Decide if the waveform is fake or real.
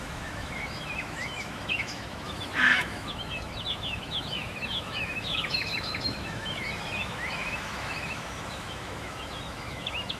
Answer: fake